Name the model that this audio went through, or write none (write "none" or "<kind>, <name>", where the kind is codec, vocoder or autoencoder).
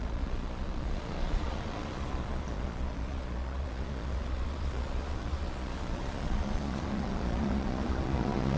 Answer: vocoder, Vocos